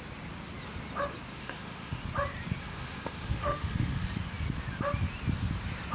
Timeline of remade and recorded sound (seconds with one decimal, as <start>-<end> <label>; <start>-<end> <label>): 0.0-1.3 recorded; 1.3-2.0 remade; 2.0-2.6 recorded; 2.6-4.1 remade; 4.1-5.9 recorded